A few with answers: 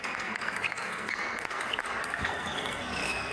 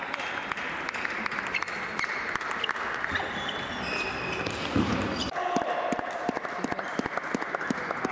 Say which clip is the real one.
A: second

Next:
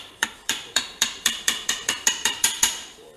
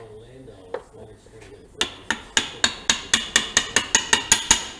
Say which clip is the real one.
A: second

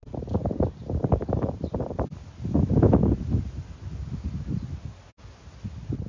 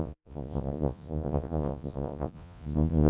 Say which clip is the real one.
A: first